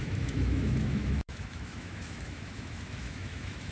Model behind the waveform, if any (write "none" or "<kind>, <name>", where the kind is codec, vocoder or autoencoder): autoencoder, DAC-VAE